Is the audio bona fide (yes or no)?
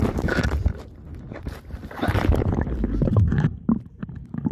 no